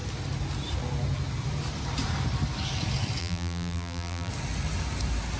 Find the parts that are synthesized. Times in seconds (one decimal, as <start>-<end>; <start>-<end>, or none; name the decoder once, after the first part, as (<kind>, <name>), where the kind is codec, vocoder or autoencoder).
3.2-4.3 (vocoder, BigVGAN v2)